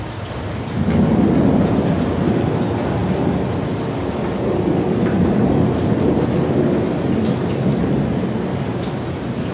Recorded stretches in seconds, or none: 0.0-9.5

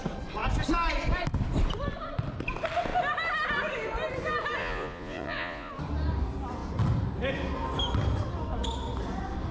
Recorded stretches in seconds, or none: 0.0-4.6; 5.7-9.5

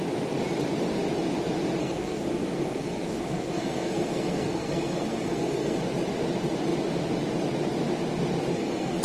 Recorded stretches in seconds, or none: 0.0-1.8; 5.8-8.5